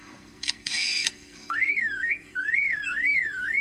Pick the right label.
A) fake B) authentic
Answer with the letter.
A